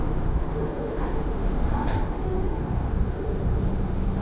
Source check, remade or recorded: remade